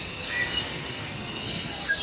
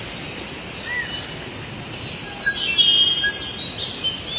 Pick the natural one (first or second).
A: second